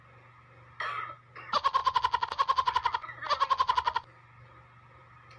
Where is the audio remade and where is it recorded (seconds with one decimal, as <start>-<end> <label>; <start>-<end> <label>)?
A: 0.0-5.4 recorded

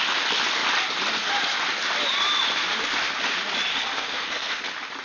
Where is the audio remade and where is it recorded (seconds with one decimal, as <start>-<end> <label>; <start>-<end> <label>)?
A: 0.0-3.7 recorded; 3.7-4.6 remade; 4.6-5.0 recorded

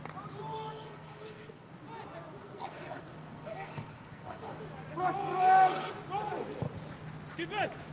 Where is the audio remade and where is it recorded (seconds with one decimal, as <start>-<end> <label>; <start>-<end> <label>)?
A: 0.0-0.7 recorded; 0.7-1.7 remade; 1.7-2.4 recorded; 2.4-4.6 remade; 4.6-5.2 recorded; 5.2-5.9 remade; 5.9-7.9 recorded

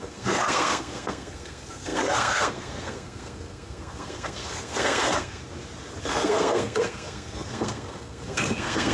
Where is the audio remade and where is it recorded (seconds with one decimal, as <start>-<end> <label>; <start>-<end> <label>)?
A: 0.0-5.4 remade; 5.4-6.0 recorded; 6.0-8.9 remade

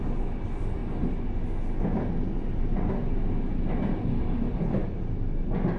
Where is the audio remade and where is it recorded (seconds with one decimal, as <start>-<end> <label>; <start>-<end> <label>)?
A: 0.0-5.8 recorded

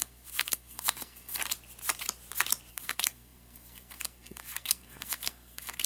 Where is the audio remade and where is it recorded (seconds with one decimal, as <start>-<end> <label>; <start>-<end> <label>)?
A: 0.0-1.4 remade; 1.4-2.7 recorded; 2.7-5.9 remade

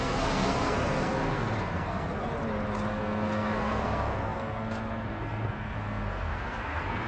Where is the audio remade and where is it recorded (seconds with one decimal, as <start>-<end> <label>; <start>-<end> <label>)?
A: 0.0-2.2 remade; 2.2-2.9 recorded; 2.9-7.1 remade